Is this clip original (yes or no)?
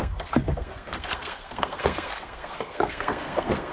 no